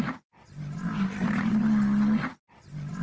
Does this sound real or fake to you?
real